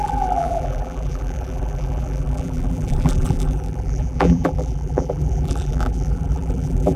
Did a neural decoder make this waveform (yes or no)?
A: yes